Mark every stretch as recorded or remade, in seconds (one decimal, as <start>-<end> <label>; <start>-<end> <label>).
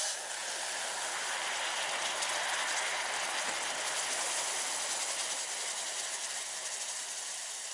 0.0-7.7 recorded